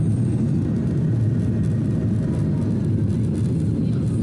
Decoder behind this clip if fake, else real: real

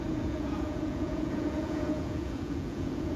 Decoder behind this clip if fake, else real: fake, vocoder, Vocos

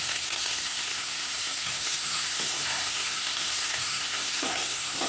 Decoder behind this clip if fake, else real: fake, codec, SNAC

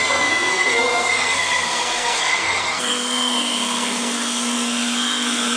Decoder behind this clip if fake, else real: fake, codec, SNAC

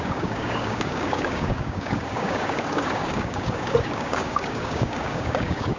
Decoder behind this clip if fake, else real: fake, codec, DAC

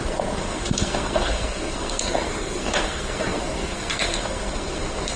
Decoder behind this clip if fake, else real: fake, codec, SNAC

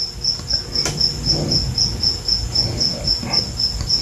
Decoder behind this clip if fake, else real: real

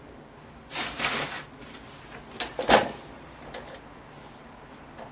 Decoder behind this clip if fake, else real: real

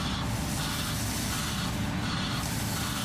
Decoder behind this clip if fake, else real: real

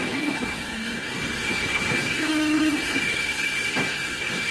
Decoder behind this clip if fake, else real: fake, codec, SNAC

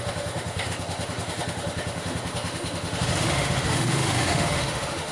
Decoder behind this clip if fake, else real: fake, autoencoder, DAC-VAE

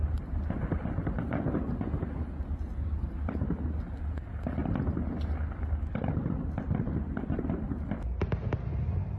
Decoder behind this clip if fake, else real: real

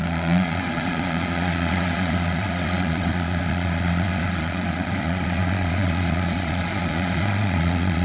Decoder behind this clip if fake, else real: fake, vocoder, Vocos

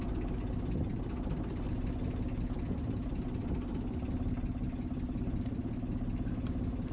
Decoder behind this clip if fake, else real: real